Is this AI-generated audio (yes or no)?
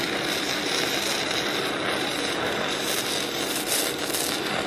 yes